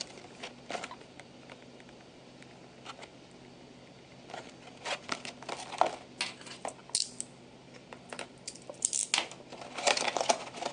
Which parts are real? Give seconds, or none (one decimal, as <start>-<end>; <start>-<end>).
0.0-10.7